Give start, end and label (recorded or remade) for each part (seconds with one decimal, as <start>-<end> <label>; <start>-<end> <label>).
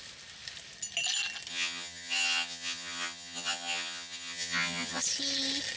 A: 0.0-1.5 recorded; 1.5-5.0 remade; 5.0-5.8 recorded